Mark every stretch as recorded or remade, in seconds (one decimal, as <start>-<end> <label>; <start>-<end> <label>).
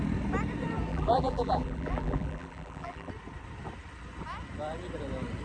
0.0-0.9 recorded; 0.9-3.1 remade; 3.1-5.4 recorded